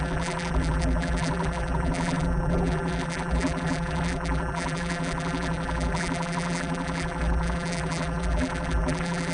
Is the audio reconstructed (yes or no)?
yes